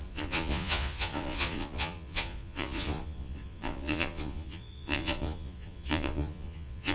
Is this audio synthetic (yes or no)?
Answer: yes